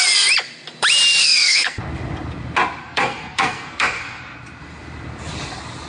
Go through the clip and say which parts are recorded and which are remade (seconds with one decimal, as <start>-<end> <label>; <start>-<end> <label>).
0.0-1.2 recorded; 1.2-1.8 remade; 1.8-2.8 recorded; 2.8-4.2 remade; 4.2-5.9 recorded